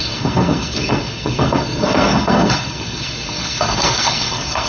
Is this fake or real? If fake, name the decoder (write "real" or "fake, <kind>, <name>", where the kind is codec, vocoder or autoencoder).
fake, codec, SNAC